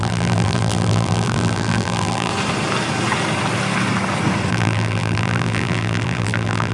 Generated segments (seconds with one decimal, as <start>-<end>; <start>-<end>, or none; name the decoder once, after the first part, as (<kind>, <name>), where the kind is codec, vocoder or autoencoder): 0.0-2.3 (vocoder, BigVGAN v2); 4.5-6.7